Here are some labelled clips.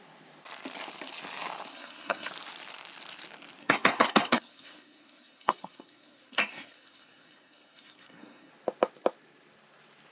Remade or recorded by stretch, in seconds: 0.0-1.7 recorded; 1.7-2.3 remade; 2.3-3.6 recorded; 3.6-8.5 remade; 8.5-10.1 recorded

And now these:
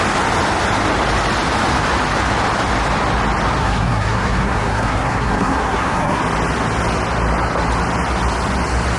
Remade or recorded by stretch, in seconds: 0.0-3.6 recorded; 3.6-6.2 remade; 6.2-9.0 recorded

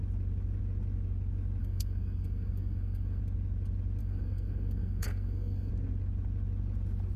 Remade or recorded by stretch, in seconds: 0.0-1.6 recorded; 1.6-3.2 remade; 3.2-4.0 recorded; 4.0-5.7 remade; 5.7-7.2 recorded

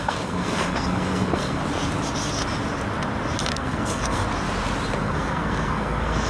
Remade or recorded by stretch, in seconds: 0.0-1.6 remade; 1.6-3.5 recorded; 3.5-4.2 remade; 4.2-4.9 recorded; 4.9-6.3 remade

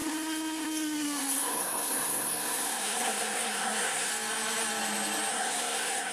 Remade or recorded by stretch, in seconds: 0.0-4.1 remade; 4.1-5.3 recorded; 5.3-6.1 remade

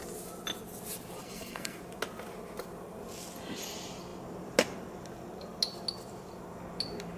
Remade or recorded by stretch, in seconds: 0.0-1.2 recorded; 1.2-1.8 remade; 1.8-7.2 recorded

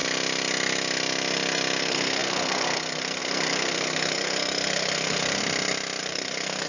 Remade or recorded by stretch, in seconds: 0.0-1.8 recorded; 1.8-5.4 remade; 5.4-6.0 recorded; 6.0-6.7 remade

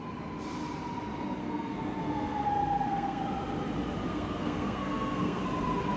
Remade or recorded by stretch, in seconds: 0.0-1.4 recorded; 1.4-3.2 remade; 3.2-4.1 recorded; 4.1-5.4 remade; 5.4-6.0 recorded